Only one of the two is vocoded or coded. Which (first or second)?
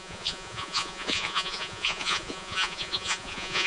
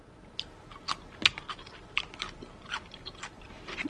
first